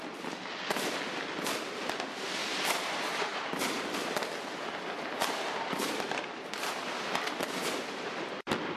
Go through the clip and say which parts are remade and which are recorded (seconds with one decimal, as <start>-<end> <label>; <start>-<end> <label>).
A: 0.0-2.4 remade; 2.4-2.9 recorded; 2.9-3.3 remade; 3.3-4.6 recorded; 4.6-8.8 remade